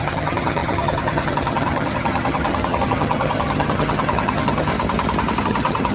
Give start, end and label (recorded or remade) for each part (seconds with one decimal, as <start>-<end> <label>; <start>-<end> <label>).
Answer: 0.0-4.7 remade; 4.7-5.4 recorded; 5.4-5.9 remade